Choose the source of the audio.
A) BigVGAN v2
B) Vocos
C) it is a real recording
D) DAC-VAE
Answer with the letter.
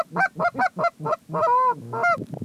C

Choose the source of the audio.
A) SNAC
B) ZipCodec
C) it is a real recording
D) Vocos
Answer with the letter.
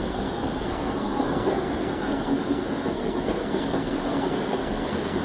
A